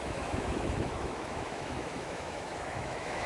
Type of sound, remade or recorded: remade